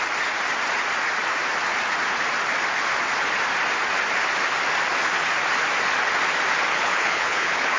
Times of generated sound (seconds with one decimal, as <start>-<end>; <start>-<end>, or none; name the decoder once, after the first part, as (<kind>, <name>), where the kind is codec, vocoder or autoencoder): 6.7-7.8 (codec, HILCodec)